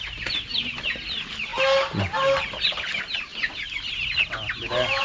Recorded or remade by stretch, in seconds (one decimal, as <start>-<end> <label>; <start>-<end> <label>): 0.0-5.0 recorded